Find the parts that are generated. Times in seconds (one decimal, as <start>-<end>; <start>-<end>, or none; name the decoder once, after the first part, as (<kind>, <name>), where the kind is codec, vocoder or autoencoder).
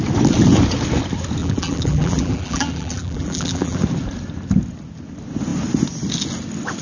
1.4-3.8 (vocoder, BigVGAN v2)